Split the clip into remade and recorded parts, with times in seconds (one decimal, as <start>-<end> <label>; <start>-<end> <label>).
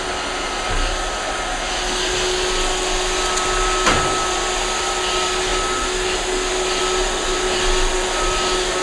0.0-8.8 recorded